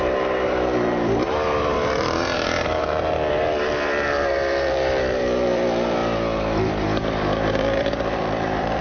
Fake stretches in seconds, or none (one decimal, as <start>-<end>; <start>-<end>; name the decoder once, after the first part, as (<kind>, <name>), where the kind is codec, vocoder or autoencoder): 0.0-6.0 (vocoder, BigVGAN v2); 7.5-8.8